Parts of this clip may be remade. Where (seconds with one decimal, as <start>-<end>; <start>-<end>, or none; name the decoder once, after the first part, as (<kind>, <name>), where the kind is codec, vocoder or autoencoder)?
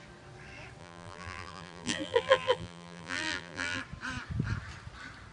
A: 0.8-3.8 (vocoder, BigVGAN v2)